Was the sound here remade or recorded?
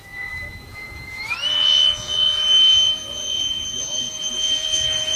remade